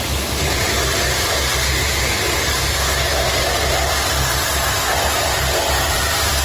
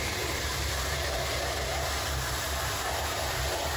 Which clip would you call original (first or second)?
first